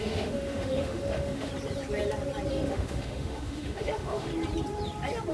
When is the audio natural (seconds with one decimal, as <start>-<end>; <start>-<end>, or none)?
1.5-2.5; 4.3-5.3